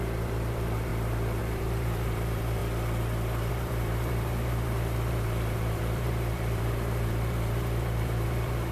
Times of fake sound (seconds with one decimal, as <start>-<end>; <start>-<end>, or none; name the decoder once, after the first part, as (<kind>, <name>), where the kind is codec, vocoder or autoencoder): 0.0-0.9 (vocoder, BigVGAN v2); 1.4-2.6; 3.5-8.7